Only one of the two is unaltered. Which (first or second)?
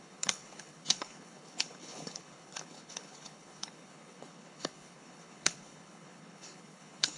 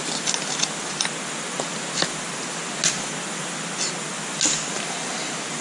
second